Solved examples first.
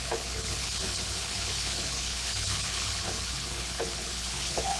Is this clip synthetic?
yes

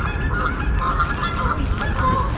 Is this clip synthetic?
no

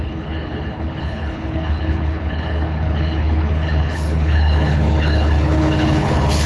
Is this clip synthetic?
yes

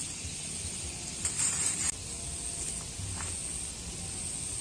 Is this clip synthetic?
no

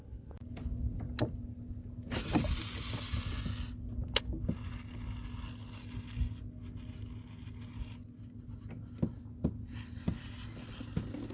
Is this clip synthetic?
no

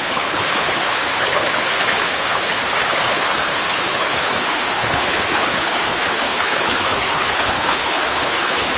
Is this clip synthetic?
yes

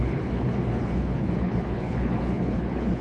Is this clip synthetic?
yes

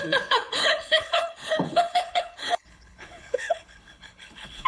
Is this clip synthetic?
yes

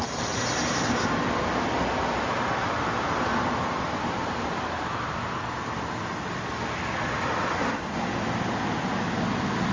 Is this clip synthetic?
no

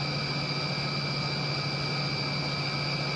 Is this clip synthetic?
no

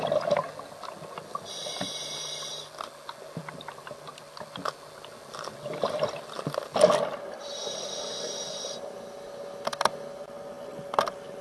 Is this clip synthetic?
no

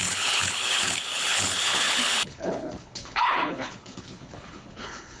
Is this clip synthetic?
yes